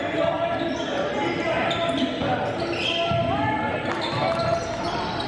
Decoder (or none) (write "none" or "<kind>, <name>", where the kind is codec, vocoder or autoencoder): none